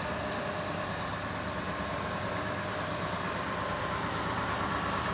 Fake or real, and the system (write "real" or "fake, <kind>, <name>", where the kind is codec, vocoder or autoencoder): real